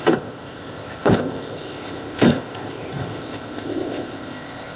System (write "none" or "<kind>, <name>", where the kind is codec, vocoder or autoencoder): codec, ZipCodec